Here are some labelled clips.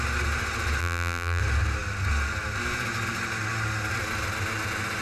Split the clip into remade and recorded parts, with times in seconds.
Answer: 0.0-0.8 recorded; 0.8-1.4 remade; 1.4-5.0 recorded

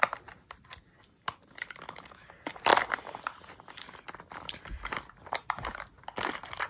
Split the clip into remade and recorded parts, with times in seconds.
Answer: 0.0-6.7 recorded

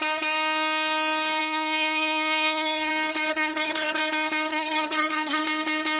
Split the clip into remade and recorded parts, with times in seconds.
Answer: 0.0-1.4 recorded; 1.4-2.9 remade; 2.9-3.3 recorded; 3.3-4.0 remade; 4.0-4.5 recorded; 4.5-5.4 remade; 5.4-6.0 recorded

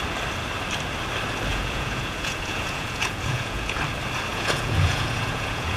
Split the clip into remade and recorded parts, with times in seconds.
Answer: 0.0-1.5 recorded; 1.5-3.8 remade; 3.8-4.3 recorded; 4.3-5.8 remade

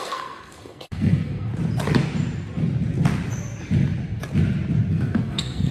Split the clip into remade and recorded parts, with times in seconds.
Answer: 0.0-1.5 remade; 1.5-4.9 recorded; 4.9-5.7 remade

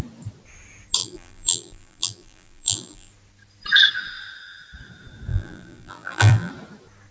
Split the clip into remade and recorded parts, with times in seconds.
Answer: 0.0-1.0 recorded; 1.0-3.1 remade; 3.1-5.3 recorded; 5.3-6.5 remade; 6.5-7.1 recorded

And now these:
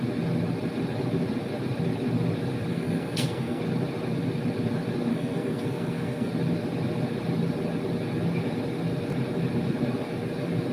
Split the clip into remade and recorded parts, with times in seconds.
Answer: 0.0-2.7 recorded; 2.7-3.6 remade; 3.6-5.1 recorded; 5.1-6.3 remade; 6.3-10.7 recorded